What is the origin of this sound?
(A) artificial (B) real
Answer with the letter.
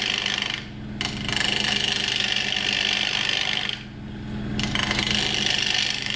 B